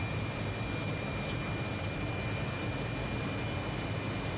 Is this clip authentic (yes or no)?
yes